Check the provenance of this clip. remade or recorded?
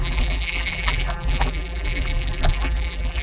remade